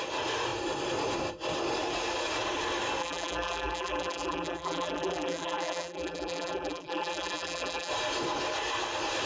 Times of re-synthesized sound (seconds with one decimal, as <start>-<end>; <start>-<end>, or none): 3.0-7.9